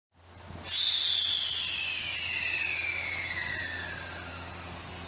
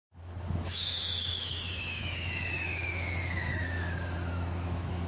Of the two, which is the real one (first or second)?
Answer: first